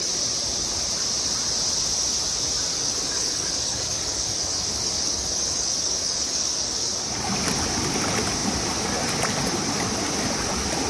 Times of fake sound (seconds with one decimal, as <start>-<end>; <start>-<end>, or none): 2.7-6.9